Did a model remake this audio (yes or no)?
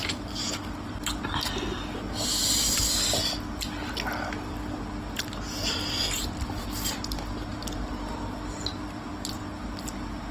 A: no